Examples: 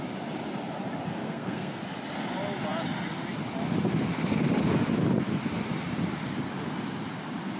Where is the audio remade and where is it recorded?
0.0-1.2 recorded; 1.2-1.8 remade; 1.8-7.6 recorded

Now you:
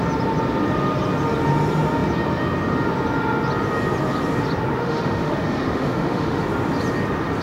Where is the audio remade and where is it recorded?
0.0-4.8 recorded; 4.8-6.4 remade; 6.4-7.4 recorded

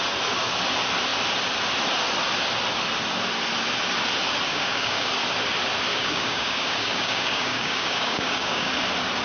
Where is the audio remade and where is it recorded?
0.0-4.5 recorded; 4.5-5.1 remade; 5.1-5.9 recorded; 5.9-8.7 remade; 8.7-9.2 recorded

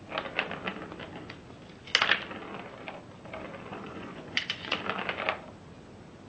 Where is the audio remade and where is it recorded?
0.0-3.7 recorded; 3.7-4.8 remade; 4.8-6.3 recorded

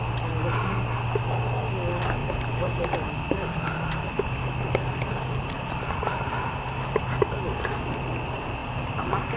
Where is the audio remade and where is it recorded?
0.0-2.2 recorded; 2.2-4.1 remade; 4.1-5.1 recorded; 5.1-6.0 remade; 6.0-8.6 recorded; 8.6-9.4 remade

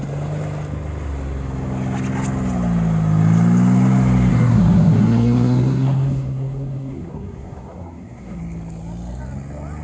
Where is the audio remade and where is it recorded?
0.0-4.3 recorded; 4.3-8.4 remade; 8.4-9.8 recorded

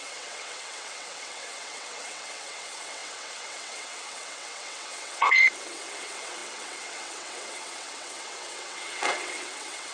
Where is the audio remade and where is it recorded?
0.0-9.9 remade

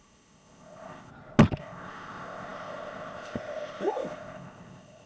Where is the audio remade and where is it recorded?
0.0-1.1 remade; 1.1-1.6 recorded; 1.6-5.1 remade